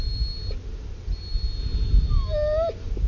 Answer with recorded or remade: recorded